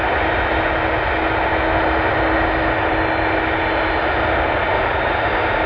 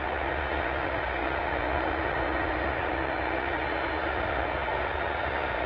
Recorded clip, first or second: first